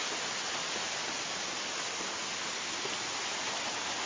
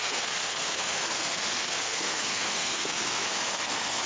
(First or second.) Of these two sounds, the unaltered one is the first